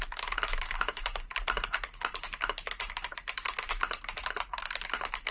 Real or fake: fake